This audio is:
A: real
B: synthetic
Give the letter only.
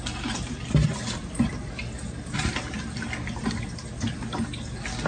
A